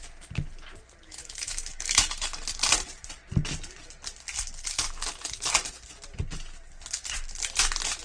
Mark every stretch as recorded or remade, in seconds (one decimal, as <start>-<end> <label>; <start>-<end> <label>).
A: 0.0-1.2 recorded; 1.2-2.2 remade; 2.2-8.0 recorded